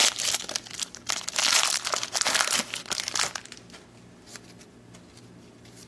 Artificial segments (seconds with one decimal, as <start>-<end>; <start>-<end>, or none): none